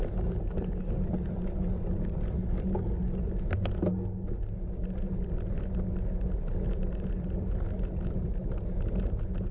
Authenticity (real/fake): real